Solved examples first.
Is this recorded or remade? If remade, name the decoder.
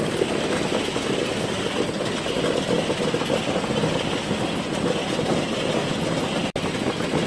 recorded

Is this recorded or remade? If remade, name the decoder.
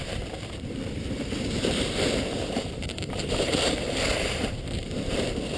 remade, vocoder, BigVGAN v2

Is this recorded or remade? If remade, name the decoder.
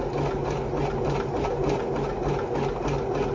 recorded